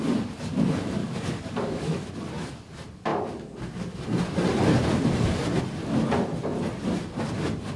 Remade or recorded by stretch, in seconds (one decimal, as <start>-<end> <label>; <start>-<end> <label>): 0.0-1.0 recorded; 1.0-2.1 remade; 2.1-7.8 recorded